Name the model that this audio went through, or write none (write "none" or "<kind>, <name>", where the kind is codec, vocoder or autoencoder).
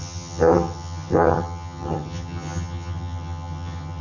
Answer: vocoder, HiFi-GAN